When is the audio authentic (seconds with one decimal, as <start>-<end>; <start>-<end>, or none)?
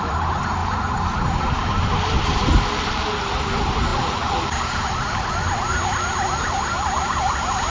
none